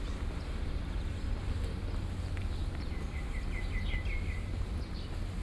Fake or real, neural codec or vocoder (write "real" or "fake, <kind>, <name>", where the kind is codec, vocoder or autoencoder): real